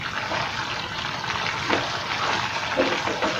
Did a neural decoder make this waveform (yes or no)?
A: no